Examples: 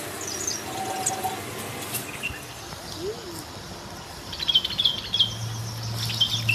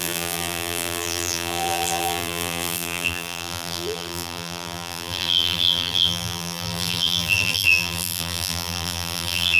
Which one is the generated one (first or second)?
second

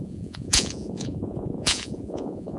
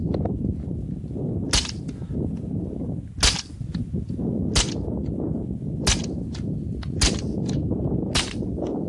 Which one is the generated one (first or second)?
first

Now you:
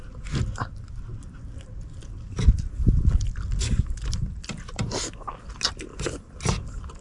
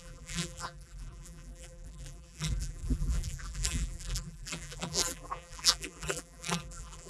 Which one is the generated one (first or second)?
second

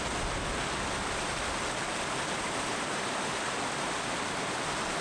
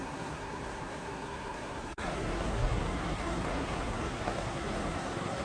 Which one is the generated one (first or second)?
second